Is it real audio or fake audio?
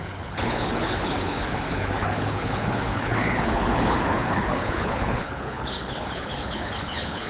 fake